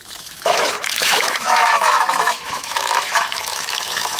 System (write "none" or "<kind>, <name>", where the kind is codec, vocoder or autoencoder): autoencoder, DAC-VAE